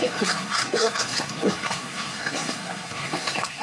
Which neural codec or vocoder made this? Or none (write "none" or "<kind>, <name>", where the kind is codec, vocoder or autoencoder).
codec, SNAC